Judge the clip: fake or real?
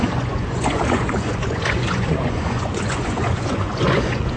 fake